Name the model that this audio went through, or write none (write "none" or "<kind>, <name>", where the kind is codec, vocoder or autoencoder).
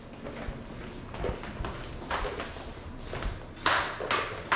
none